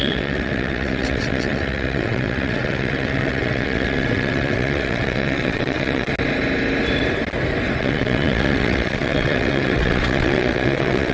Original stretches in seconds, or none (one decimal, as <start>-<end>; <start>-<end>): 6.1-7.8